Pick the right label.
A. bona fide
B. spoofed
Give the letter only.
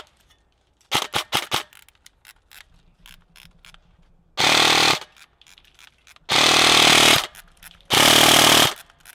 A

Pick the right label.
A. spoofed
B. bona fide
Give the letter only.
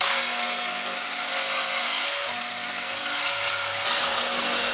A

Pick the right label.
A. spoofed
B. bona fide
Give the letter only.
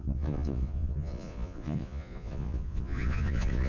A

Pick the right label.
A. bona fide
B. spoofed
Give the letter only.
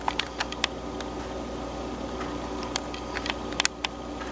A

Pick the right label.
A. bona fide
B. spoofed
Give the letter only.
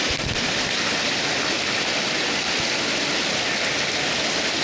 A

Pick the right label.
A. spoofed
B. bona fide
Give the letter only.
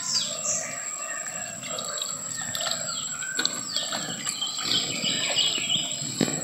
B